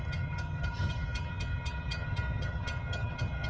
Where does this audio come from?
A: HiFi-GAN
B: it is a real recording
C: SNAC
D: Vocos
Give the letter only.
A